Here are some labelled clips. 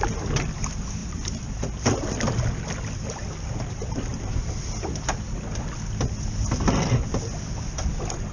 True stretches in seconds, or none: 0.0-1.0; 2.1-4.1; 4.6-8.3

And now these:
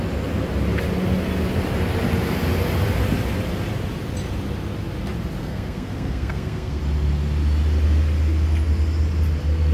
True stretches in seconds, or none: 0.0-5.4; 6.8-9.7

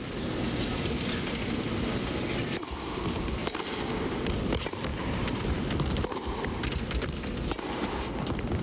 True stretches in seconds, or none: 0.0-3.4; 4.4-4.9; 6.6-8.6

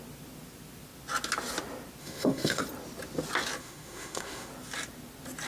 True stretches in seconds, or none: 0.0-2.0; 2.6-3.6; 4.5-5.5